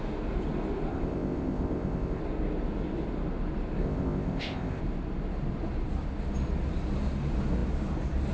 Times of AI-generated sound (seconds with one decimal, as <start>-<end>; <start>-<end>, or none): 0.9-2.2; 3.8-4.8